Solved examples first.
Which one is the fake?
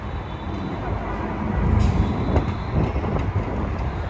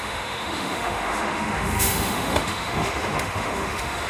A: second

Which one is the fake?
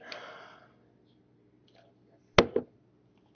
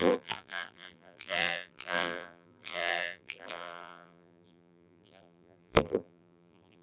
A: second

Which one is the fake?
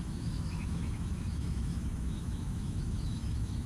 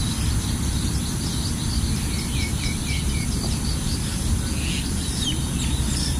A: first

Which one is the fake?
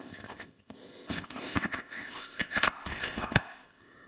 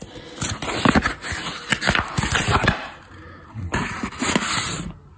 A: first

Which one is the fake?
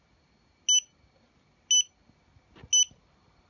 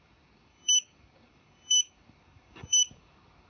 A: second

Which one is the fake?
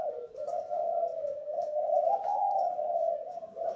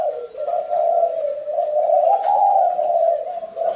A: first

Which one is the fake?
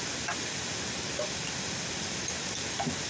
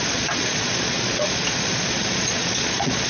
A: second